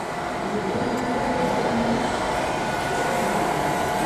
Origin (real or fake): real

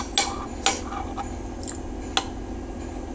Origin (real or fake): real